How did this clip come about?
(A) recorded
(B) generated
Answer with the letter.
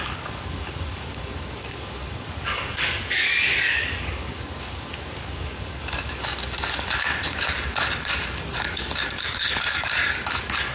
B